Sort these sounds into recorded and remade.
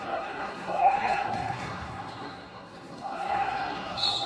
remade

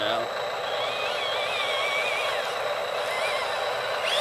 recorded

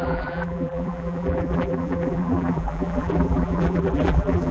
remade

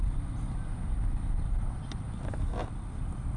recorded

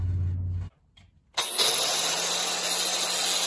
recorded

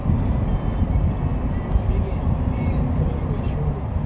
recorded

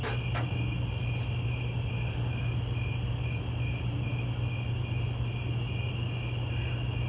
recorded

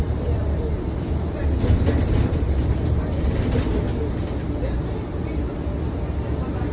recorded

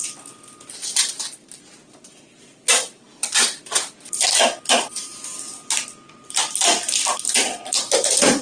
recorded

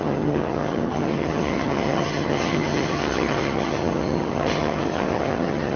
remade